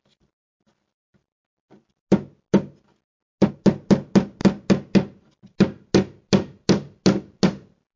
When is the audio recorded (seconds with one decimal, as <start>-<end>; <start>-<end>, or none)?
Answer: 0.0-8.0